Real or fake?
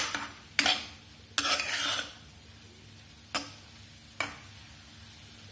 real